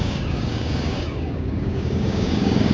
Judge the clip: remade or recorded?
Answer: remade